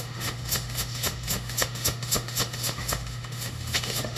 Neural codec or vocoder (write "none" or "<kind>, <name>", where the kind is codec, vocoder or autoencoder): autoencoder, DAC-VAE